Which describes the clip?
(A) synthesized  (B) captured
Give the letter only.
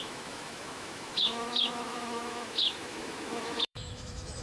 A